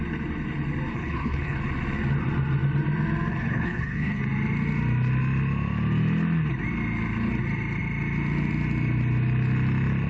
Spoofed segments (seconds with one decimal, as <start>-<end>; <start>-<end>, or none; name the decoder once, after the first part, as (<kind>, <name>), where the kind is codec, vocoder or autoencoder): 0.9-1.6 (codec, HILCodec); 3.3-4.2